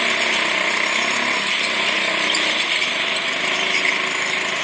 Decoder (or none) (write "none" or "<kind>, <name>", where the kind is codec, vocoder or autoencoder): none